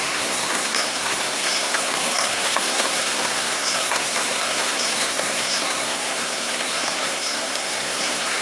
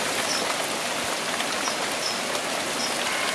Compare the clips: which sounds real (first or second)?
second